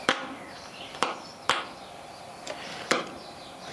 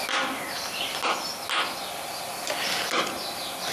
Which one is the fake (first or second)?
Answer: first